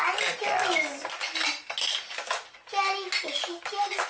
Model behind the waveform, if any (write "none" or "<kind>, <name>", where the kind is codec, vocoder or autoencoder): none